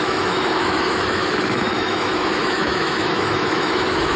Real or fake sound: fake